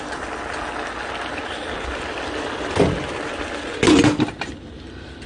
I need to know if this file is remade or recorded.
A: recorded